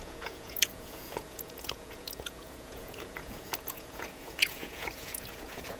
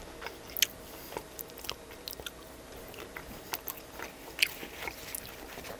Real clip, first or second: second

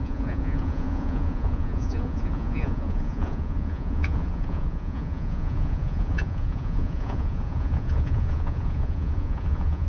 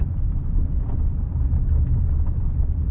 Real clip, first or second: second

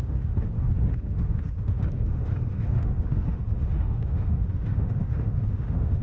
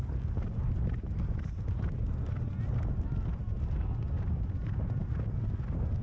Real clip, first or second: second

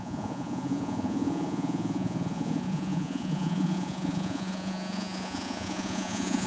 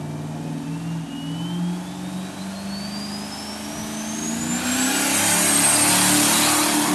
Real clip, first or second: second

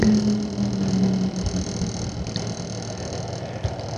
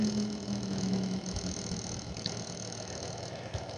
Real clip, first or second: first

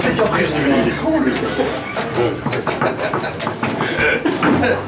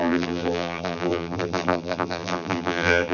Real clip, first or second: first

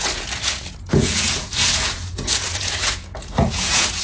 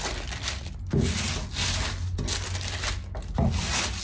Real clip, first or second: second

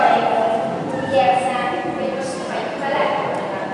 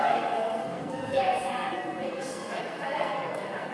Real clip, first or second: first